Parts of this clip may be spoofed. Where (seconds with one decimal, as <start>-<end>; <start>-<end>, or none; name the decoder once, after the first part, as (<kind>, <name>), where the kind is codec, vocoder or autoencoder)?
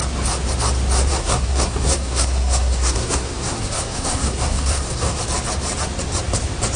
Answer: 1.1-5.2 (codec, SNAC)